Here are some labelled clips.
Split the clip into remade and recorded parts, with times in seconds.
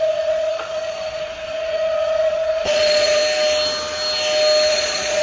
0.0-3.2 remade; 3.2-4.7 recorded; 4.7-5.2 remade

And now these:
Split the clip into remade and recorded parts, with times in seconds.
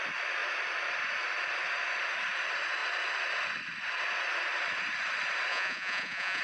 0.0-5.5 recorded; 5.5-6.4 remade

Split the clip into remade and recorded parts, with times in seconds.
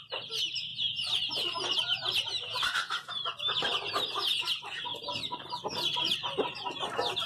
0.0-0.7 recorded; 0.7-3.1 remade; 3.1-4.9 recorded; 4.9-5.5 remade; 5.5-7.3 recorded